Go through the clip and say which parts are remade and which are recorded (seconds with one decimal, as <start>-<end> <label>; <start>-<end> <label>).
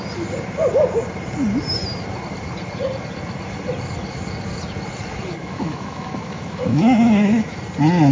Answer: 0.0-5.4 recorded; 5.4-7.6 remade; 7.6-8.1 recorded